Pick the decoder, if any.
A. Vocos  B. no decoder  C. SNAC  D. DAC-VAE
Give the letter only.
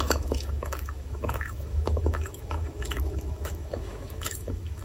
D